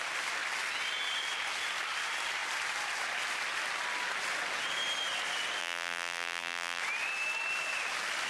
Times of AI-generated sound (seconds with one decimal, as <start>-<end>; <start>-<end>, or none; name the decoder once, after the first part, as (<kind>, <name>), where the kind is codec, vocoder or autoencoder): 5.6-6.8 (vocoder, BigVGAN v2)